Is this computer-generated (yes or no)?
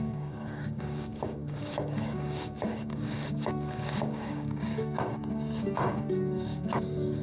yes